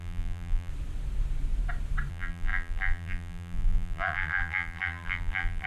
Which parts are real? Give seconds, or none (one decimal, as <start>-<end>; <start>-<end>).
0.7-2.1